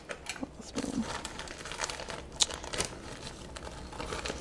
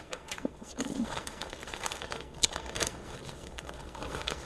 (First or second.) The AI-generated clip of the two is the second